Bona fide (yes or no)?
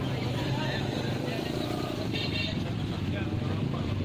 yes